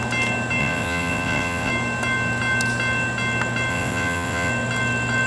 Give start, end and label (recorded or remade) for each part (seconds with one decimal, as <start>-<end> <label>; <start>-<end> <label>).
0.0-0.6 recorded; 0.6-1.7 remade; 1.7-3.7 recorded; 3.7-4.5 remade; 4.5-5.3 recorded

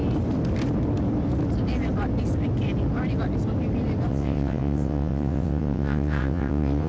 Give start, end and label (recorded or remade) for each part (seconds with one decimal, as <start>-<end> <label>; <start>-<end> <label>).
0.0-4.1 recorded; 4.1-6.9 remade

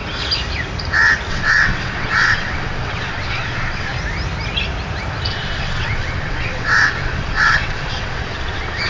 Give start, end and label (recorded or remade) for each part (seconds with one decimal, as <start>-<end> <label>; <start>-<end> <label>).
0.0-1.3 recorded; 1.3-3.9 remade; 3.9-5.3 recorded; 5.3-8.9 remade

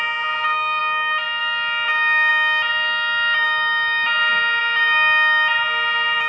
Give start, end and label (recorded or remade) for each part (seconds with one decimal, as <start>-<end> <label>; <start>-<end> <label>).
0.0-6.3 recorded

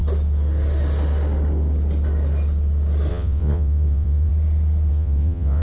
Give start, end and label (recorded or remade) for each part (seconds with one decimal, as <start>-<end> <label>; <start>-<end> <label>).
0.0-3.1 recorded; 3.1-4.3 remade; 4.3-4.9 recorded; 4.9-5.6 remade

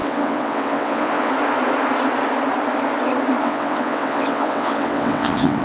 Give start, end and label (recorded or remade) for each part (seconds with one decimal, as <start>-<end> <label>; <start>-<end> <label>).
0.0-1.3 remade; 1.3-3.4 recorded; 3.4-5.6 remade

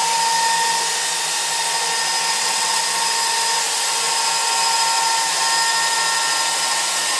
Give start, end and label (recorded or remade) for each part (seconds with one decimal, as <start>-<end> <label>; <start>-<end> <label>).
0.0-2.3 recorded; 2.3-2.8 remade; 2.8-7.2 recorded

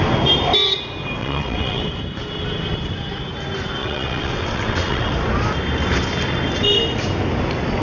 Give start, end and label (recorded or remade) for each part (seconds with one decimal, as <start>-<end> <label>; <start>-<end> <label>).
0.0-1.2 recorded; 1.2-1.8 remade; 1.8-3.8 recorded; 3.8-5.1 remade; 5.1-7.8 recorded